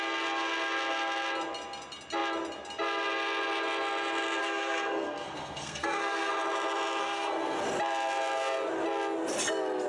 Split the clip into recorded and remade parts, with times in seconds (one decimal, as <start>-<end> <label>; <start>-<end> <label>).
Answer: 0.0-4.4 recorded; 4.4-6.3 remade; 6.3-7.0 recorded; 7.0-7.6 remade; 7.6-9.9 recorded